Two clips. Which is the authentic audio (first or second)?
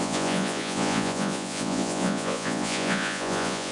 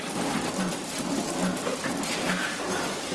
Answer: second